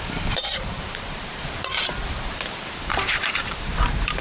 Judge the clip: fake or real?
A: fake